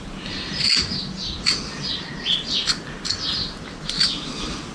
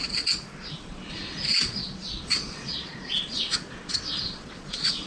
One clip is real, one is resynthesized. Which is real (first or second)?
first